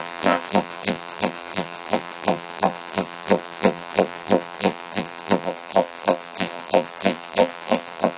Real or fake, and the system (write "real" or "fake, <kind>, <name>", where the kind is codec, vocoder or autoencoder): fake, vocoder, BigVGAN v2